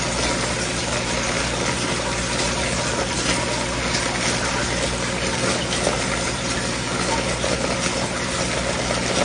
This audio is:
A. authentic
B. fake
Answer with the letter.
A